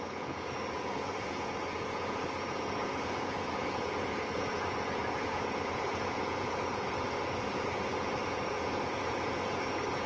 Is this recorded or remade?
remade